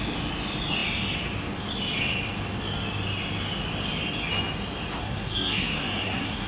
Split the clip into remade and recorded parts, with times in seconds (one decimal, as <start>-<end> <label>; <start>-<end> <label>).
0.0-5.0 recorded; 5.0-6.5 remade